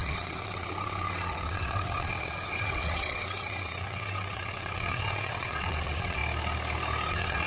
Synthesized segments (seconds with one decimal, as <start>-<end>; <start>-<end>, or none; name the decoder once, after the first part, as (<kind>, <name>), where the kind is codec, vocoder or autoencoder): 0.0-6.2 (vocoder, WaveNeXt); 7.1-7.5